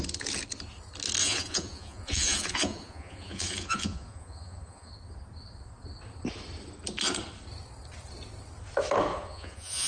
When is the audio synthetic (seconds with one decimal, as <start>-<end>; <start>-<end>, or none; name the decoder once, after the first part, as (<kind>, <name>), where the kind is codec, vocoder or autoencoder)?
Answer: 1.2-4.9 (vocoder, Vocos); 9.1-9.9